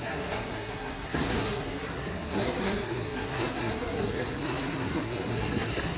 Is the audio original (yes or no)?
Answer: no